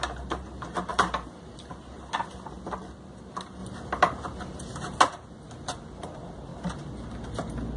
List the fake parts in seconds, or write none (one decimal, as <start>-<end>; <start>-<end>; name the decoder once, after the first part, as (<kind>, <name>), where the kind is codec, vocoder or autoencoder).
0.9-1.5 (vocoder, BigVGAN v2)